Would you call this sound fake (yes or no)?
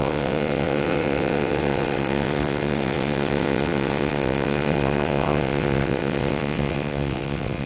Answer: yes